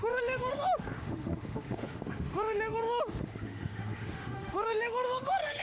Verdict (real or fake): fake